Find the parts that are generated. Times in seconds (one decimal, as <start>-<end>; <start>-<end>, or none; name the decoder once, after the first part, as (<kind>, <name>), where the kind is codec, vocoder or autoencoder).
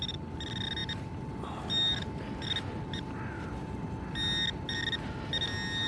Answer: none